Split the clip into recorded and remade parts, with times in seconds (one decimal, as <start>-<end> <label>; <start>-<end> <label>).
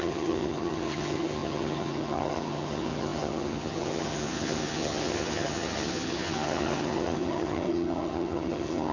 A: 0.0-8.9 remade